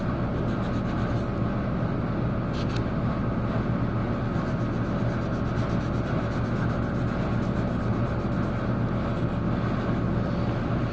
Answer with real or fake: real